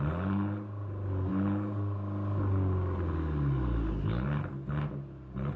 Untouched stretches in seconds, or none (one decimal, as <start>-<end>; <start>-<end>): 0.0-5.6